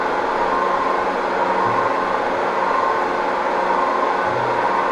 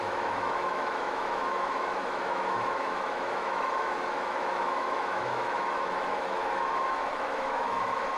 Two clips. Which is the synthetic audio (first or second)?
second